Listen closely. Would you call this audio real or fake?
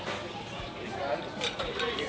real